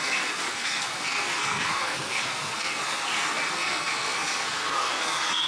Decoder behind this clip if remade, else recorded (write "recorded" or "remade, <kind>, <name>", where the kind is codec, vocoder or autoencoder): remade, codec, SNAC